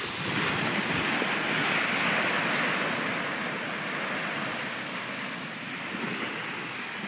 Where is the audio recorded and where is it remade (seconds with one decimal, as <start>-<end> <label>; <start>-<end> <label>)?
0.0-7.1 recorded